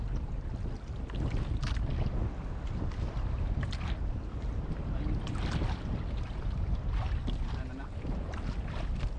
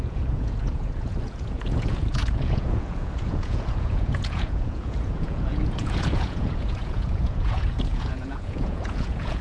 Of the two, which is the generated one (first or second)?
second